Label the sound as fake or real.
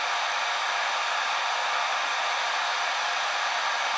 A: real